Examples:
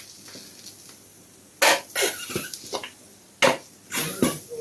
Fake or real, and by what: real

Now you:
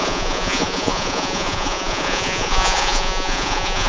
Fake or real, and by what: fake, vocoder, Vocos